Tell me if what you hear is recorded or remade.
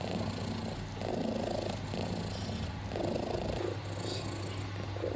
recorded